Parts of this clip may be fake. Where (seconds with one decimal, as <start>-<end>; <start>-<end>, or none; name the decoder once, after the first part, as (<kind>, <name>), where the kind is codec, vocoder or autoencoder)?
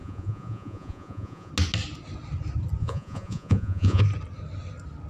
0.0-1.5 (vocoder, Vocos); 2.8-4.0